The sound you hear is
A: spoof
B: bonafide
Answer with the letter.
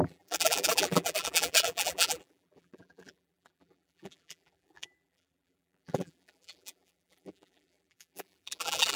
A